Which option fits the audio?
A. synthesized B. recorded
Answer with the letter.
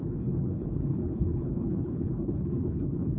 A